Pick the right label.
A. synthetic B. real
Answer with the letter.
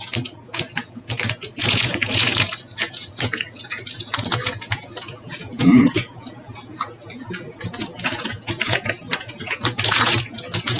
A